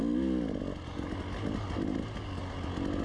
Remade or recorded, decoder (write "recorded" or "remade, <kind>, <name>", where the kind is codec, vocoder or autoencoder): recorded